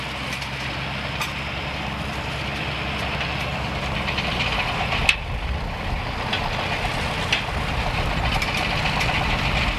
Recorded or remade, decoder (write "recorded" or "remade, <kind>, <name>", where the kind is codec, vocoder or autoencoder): recorded